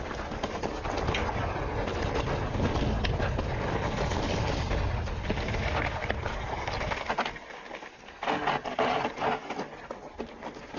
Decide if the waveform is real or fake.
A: real